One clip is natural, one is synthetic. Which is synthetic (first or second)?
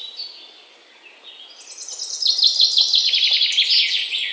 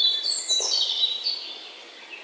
second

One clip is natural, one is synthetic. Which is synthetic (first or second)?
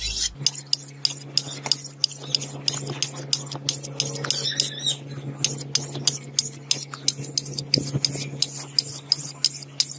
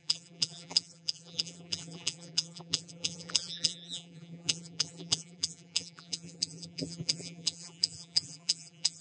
second